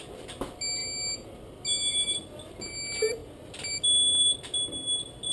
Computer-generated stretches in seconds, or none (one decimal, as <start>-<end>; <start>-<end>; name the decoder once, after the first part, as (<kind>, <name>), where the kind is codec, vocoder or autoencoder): none